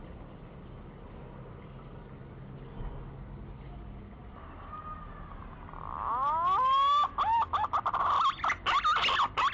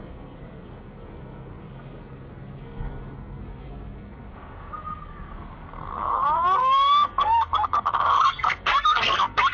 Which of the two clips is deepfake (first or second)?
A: second